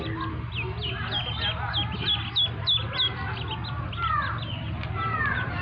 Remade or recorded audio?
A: recorded